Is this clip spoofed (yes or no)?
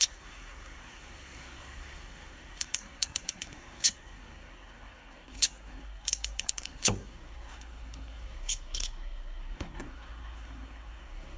yes